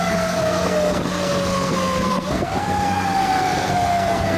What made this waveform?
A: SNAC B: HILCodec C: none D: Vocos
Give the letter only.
A